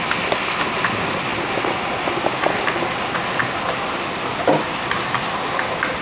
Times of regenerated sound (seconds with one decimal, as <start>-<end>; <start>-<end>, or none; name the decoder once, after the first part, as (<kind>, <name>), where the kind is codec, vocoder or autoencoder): 1.3-3.0 (vocoder, BigVGAN v2)